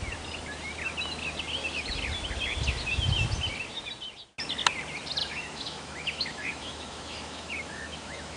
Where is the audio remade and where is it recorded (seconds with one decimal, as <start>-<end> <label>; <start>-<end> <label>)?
0.0-5.2 recorded; 5.2-8.4 remade